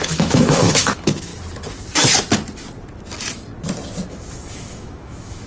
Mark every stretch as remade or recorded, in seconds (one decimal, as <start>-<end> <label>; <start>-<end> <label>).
0.0-1.3 remade; 1.3-4.1 recorded; 4.1-5.5 remade